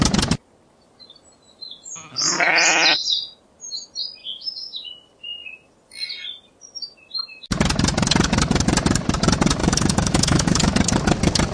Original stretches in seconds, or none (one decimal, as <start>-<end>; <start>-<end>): 0.0-4.2; 4.9-9.6; 10.7-11.5